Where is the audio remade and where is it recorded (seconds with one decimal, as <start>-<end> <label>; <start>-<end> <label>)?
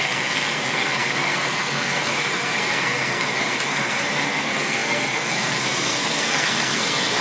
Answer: 0.0-7.2 remade